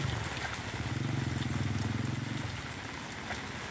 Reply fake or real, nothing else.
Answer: real